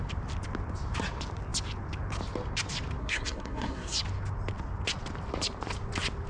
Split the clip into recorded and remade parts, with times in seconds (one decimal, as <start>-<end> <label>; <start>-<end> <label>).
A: 0.0-3.0 recorded; 3.0-4.0 remade; 4.0-6.3 recorded